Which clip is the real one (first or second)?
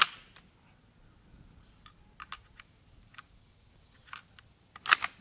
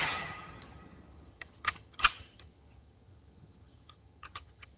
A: first